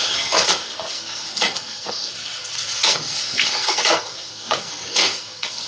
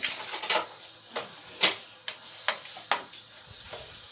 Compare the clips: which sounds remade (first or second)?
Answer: first